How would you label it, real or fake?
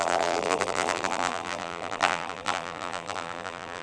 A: fake